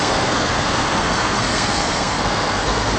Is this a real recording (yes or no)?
no